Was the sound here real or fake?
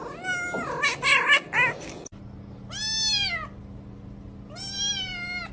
real